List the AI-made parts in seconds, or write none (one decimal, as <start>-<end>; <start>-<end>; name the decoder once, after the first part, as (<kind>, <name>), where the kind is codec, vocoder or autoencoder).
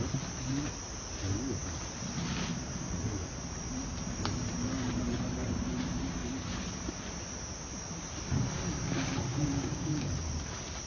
9.3-10.1 (codec, DAC)